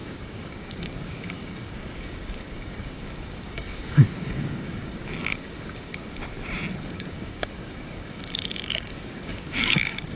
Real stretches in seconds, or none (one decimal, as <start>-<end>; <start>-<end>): 5.9-6.9

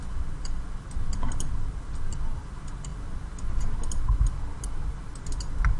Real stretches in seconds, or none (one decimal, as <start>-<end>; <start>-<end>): 0.0-5.8

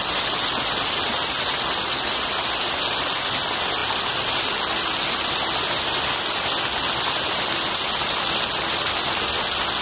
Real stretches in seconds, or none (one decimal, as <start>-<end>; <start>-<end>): 0.0-9.8

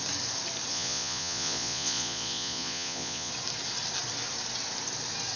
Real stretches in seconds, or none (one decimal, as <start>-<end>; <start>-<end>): 0.0-0.7; 3.3-5.4

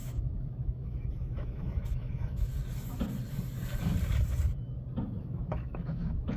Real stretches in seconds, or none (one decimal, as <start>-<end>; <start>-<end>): 2.5-5.2

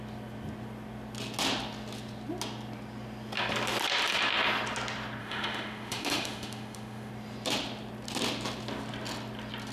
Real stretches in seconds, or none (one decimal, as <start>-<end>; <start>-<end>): 0.0-5.2; 7.1-9.7